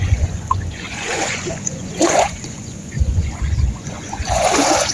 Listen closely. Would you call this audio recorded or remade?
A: remade